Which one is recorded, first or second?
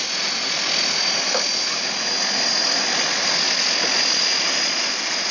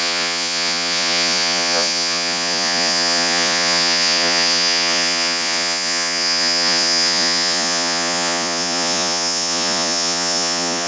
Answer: first